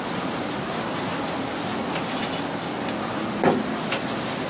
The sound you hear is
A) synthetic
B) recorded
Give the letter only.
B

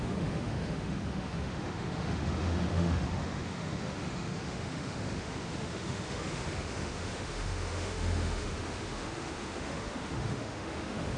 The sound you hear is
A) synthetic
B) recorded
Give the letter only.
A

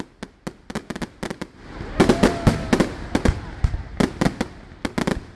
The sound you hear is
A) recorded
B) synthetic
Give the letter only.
A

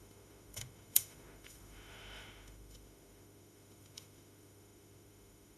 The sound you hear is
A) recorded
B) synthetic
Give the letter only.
B